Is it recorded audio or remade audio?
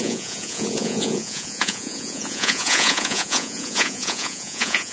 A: remade